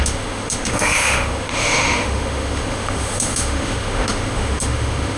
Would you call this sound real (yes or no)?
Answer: no